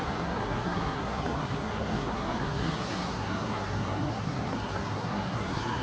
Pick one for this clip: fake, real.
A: fake